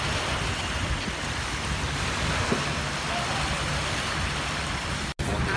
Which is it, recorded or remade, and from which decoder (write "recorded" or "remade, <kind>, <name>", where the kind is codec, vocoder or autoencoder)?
recorded